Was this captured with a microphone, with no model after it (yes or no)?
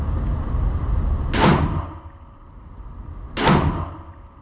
yes